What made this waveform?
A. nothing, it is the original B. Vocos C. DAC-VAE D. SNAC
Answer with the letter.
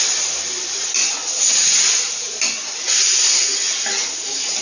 A